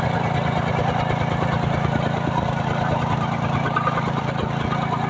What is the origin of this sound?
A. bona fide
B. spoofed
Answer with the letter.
A